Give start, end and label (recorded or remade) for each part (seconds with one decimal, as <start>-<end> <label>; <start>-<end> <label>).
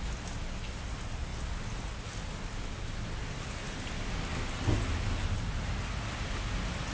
0.0-6.9 recorded